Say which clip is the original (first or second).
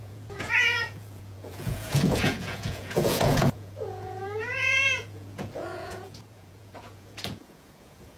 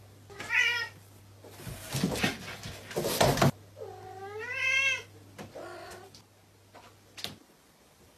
second